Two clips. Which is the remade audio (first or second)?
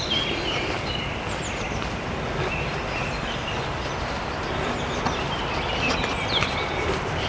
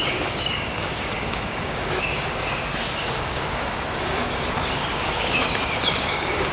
second